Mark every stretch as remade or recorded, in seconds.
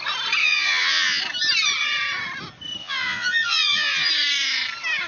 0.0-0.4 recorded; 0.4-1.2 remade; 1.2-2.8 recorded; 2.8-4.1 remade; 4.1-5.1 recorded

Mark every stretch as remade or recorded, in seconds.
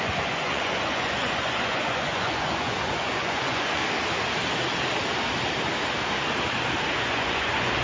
0.0-3.8 remade; 3.8-7.0 recorded; 7.0-7.8 remade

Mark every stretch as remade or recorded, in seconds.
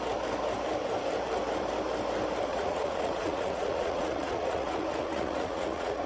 0.0-2.5 recorded; 2.5-6.1 remade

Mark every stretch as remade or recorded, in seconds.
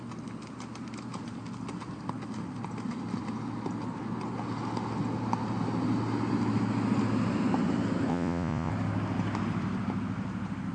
0.0-8.1 recorded; 8.1-8.7 remade; 8.7-10.7 recorded